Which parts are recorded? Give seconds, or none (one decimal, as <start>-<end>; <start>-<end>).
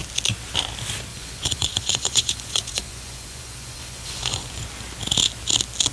0.0-1.1; 4.6-5.9